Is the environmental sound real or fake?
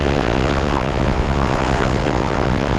fake